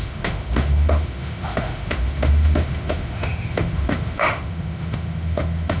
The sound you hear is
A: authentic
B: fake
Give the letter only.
B